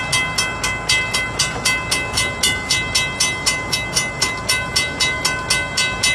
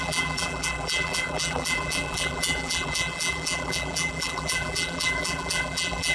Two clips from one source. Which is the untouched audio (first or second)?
first